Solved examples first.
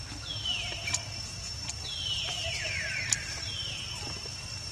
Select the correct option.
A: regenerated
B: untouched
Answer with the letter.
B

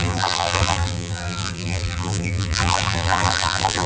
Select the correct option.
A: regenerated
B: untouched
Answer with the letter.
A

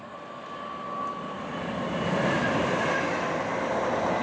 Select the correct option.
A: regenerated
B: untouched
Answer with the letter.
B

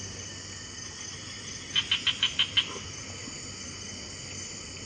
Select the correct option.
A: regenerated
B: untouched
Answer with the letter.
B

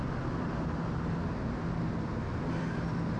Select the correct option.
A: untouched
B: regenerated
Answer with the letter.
A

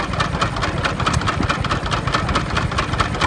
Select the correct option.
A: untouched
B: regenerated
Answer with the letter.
A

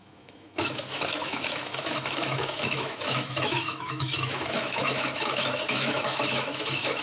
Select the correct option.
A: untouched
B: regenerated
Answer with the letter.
B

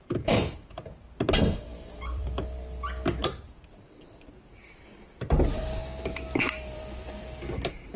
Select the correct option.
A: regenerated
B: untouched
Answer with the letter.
A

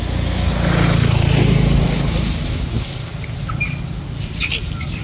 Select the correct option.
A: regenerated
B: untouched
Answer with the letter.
B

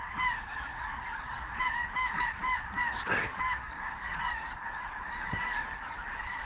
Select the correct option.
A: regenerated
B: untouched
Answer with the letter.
A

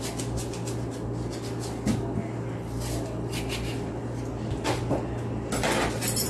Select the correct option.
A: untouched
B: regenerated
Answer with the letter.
A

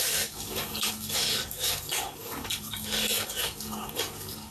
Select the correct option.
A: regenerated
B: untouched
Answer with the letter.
A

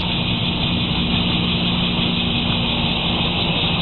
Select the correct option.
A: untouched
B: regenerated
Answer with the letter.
A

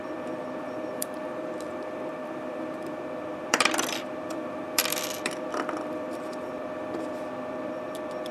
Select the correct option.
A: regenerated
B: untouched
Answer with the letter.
A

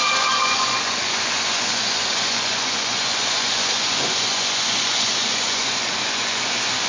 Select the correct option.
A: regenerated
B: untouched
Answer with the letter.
A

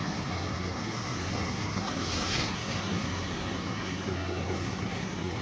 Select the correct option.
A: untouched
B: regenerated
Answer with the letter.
B